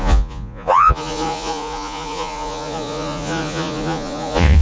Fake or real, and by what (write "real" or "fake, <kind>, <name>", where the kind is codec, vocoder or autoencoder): fake, vocoder, Vocos